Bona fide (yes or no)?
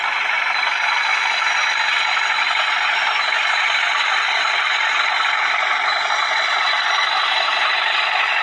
yes